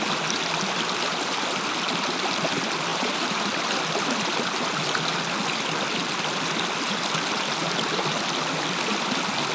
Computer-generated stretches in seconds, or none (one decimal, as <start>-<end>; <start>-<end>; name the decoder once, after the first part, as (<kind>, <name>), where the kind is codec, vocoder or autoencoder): 2.9-3.7 (vocoder, BigVGAN v2)